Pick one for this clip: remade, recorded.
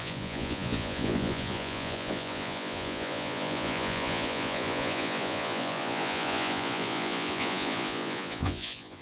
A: remade